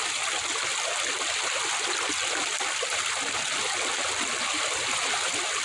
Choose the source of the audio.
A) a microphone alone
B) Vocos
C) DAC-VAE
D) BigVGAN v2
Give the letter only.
A